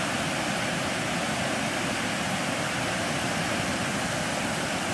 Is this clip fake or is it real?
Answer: real